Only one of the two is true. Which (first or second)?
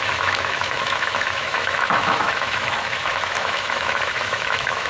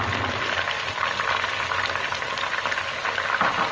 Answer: second